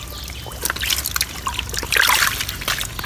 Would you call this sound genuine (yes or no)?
yes